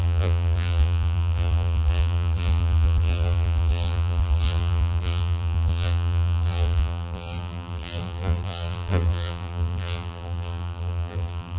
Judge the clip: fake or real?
fake